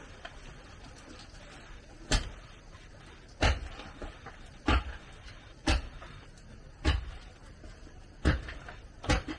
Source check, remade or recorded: recorded